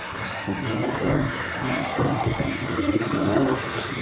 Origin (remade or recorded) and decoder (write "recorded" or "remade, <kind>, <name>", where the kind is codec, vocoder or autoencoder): remade, codec, SNAC